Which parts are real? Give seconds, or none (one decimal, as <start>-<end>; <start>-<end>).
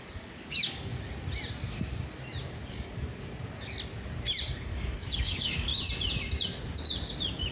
0.9-2.7; 3.1-4.5; 5.7-7.5